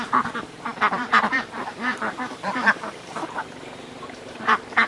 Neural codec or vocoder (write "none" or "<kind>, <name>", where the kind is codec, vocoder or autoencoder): vocoder, BigVGAN v2